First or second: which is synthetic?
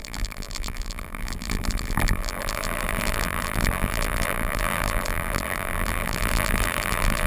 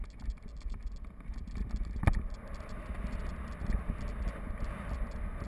first